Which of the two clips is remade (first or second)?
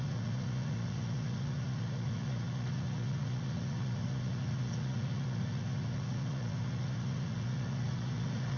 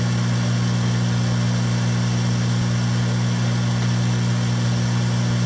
first